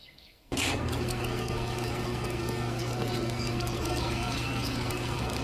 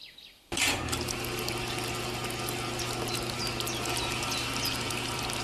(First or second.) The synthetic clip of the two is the first